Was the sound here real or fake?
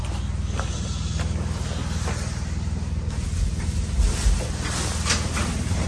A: real